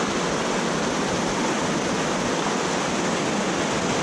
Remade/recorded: recorded